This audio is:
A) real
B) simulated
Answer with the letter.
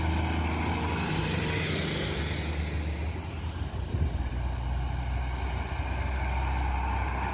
A